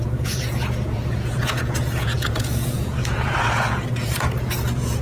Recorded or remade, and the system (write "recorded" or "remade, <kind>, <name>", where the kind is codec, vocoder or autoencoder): remade, vocoder, Vocos